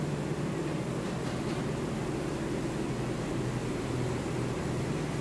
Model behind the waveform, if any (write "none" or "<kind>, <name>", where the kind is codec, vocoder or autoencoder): none